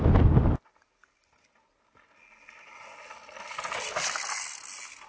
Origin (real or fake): real